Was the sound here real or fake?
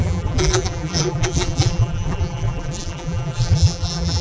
fake